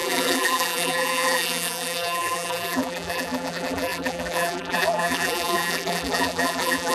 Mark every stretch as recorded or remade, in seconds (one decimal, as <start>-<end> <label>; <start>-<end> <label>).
0.0-6.9 remade